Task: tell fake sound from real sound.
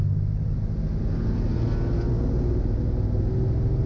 real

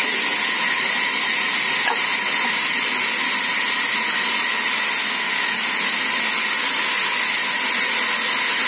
real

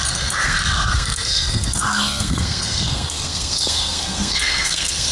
fake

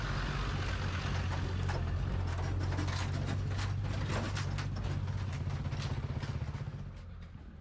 real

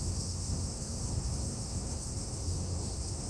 fake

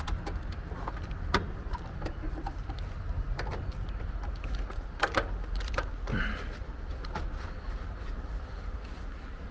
real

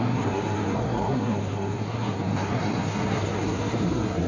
fake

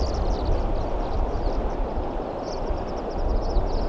real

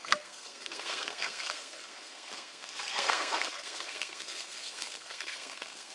fake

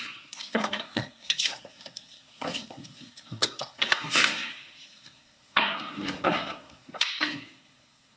fake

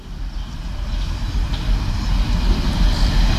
real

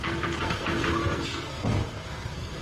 fake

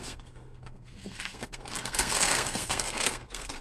fake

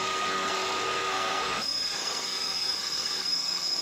fake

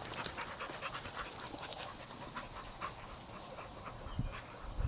real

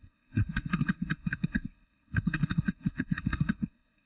fake